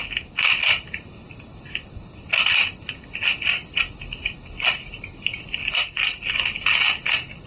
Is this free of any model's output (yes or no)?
yes